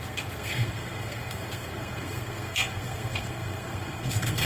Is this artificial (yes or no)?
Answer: yes